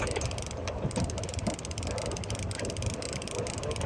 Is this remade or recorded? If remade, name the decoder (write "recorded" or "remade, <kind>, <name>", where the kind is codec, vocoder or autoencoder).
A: recorded